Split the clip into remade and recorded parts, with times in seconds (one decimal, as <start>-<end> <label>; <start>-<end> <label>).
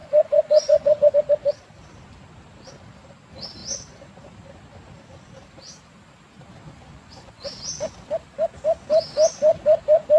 0.0-1.1 remade; 1.1-3.6 recorded; 3.6-4.1 remade; 4.1-6.9 recorded; 6.9-7.6 remade; 7.6-10.2 recorded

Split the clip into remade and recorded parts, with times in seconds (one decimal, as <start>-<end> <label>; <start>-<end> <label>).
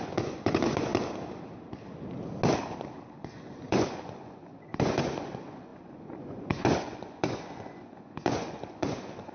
0.0-0.9 remade; 0.9-3.1 recorded; 3.1-9.3 remade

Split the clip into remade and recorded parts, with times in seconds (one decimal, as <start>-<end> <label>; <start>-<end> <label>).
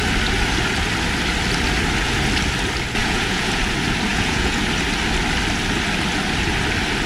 0.0-3.0 recorded; 3.0-3.6 remade; 3.6-4.1 recorded; 4.1-4.6 remade; 4.6-7.1 recorded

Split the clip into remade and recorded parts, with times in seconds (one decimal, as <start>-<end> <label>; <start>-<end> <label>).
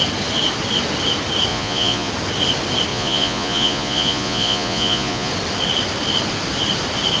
0.0-1.5 recorded; 1.5-2.1 remade; 2.1-2.9 recorded; 2.9-5.3 remade; 5.3-7.2 recorded